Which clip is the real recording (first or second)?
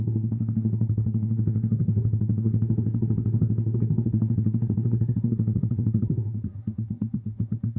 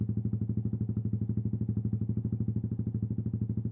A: second